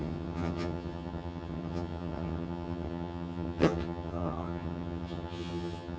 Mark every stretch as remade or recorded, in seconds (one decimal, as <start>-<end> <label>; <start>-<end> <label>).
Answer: 0.0-6.0 remade